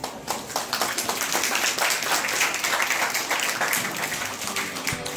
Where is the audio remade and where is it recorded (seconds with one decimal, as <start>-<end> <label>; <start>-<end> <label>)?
0.0-5.2 recorded